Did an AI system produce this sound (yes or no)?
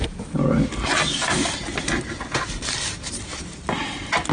no